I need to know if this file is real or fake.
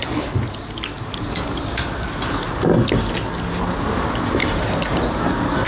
real